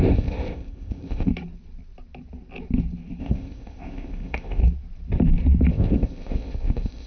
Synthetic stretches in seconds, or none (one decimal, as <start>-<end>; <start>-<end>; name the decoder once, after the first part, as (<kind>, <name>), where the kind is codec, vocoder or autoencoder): 0.0-1.3 (codec, ZipCodec); 3.2-4.6; 5.7-7.1